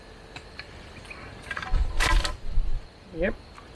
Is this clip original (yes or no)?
yes